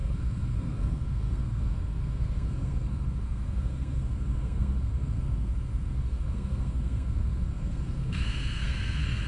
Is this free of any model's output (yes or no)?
no